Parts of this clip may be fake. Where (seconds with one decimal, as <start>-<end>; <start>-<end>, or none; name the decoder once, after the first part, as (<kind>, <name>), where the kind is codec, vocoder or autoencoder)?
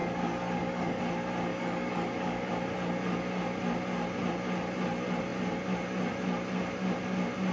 0.0-1.0 (codec, DAC); 1.5-2.5